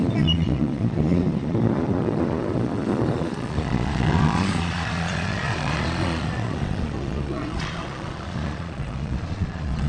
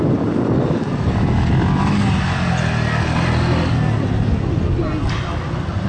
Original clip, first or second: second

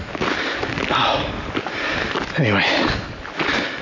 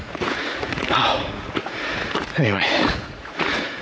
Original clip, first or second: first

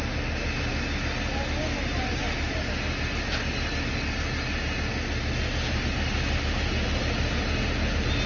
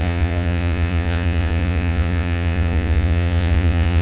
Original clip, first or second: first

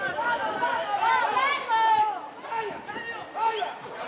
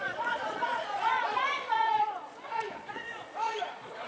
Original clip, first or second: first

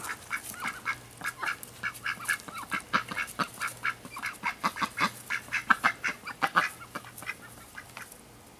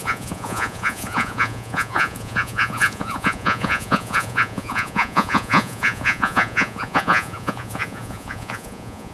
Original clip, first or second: first